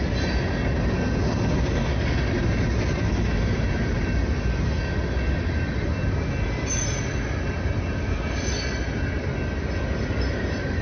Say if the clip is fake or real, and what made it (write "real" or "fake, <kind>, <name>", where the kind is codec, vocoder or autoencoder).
real